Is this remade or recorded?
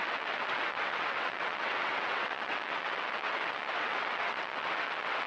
remade